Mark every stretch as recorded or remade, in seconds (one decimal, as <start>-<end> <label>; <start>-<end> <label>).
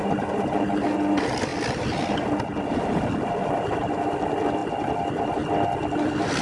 0.0-6.4 recorded